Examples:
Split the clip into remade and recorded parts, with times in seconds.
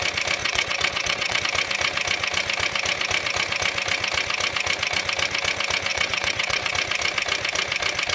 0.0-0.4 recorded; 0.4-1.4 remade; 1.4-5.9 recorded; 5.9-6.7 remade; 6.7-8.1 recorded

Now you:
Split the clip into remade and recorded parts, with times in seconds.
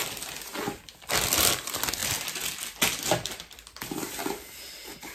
0.0-5.1 recorded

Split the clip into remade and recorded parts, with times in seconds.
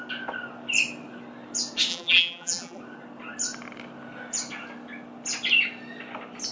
0.0-1.9 recorded; 1.9-2.8 remade; 2.8-6.5 recorded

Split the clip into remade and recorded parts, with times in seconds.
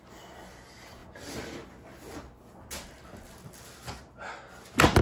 0.0-5.0 recorded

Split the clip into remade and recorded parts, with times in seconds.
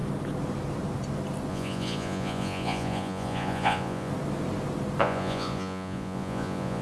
0.0-1.5 recorded; 1.5-4.1 remade; 4.1-5.0 recorded; 5.0-6.8 remade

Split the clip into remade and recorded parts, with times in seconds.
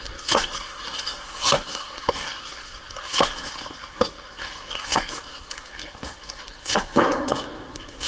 0.0-8.1 remade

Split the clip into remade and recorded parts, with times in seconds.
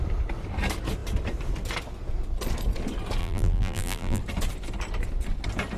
0.0-3.2 recorded; 3.2-4.2 remade; 4.2-5.8 recorded